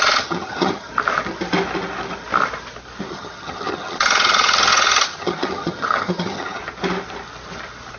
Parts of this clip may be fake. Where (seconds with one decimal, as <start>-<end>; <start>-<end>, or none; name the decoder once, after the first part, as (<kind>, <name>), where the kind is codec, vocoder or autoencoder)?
0.0-0.9 (vocoder, HiFi-GAN); 3.1-6.6

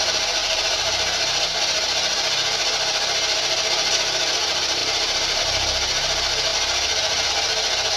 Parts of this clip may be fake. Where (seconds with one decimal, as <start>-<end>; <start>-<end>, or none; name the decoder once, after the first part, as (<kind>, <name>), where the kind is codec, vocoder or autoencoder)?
0.4-1.6 (vocoder, BigVGAN v2); 4.8-5.4

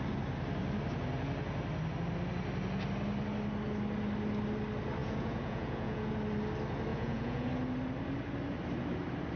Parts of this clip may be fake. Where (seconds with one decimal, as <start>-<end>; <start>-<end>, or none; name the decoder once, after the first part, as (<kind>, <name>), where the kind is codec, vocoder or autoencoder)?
5.0-6.1 (vocoder, Vocos); 6.9-7.5